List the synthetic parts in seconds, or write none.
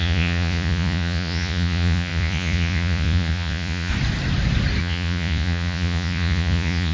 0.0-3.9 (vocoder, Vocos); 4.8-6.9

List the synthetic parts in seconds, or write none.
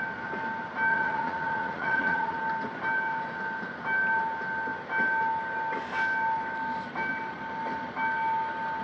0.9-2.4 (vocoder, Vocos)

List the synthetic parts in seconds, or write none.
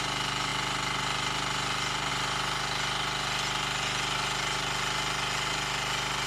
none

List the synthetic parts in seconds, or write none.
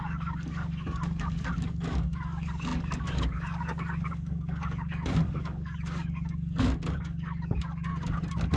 0.0-7.9 (codec, DAC)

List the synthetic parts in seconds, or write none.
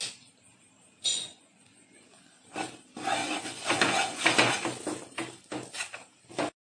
1.1-2.4 (vocoder, Vocos); 3.2-4.5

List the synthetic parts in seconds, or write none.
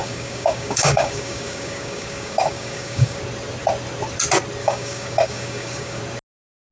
0.0-3.2 (codec, DAC); 4.6-6.0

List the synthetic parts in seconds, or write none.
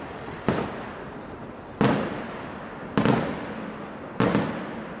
none